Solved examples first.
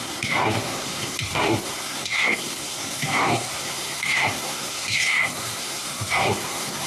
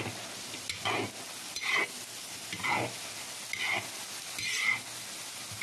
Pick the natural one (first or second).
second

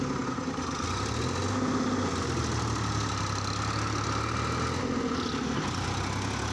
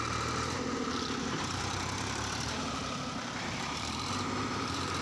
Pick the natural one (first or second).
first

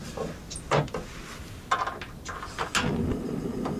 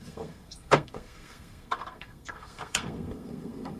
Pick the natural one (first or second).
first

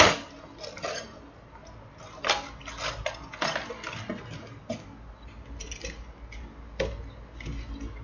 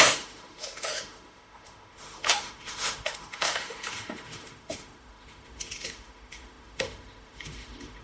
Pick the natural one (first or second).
first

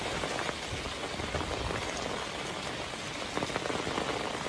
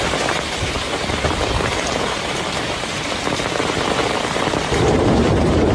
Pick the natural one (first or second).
first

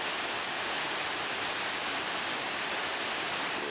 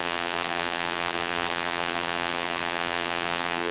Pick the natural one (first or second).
first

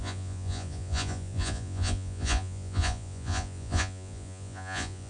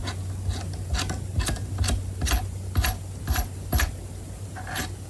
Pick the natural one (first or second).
second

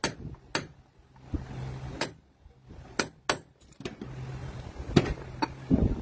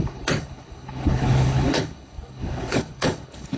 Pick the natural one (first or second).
first